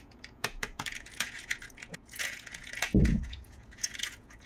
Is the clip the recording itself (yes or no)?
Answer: no